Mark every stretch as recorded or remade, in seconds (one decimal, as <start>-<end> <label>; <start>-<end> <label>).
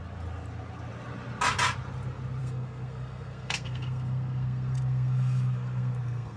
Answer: 0.0-2.4 recorded; 2.4-6.4 remade